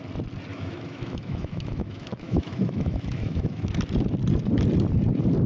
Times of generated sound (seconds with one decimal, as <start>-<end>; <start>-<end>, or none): 0.5-3.8